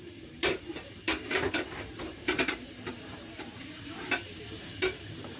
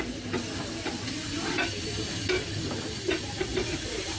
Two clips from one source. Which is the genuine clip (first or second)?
second